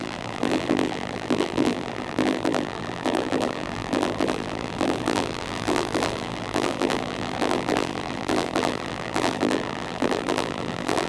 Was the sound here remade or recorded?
remade